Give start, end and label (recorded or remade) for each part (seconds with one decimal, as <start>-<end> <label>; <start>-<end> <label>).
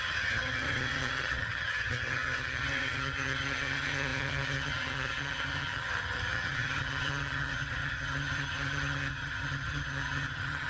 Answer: 0.0-10.7 remade